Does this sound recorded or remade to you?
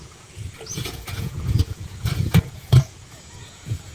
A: remade